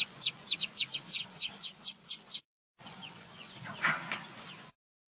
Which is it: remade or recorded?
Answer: remade